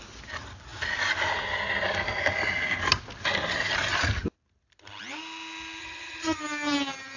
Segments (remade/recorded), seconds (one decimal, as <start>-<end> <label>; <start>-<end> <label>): 0.0-5.8 recorded; 5.8-6.4 remade; 6.4-7.2 recorded